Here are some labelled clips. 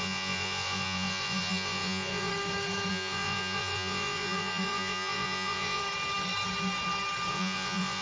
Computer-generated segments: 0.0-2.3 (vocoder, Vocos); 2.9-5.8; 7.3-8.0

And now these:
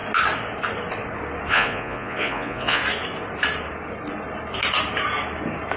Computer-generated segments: 1.5-2.8 (vocoder, Vocos)

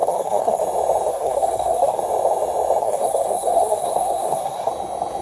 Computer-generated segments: 0.0-0.6 (codec, SNAC); 1.1-2.0; 2.8-4.7

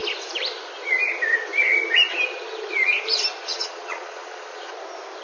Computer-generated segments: 3.4-4.7 (vocoder, Vocos)

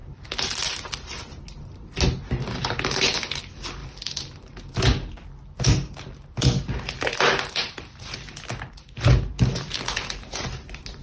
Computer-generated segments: none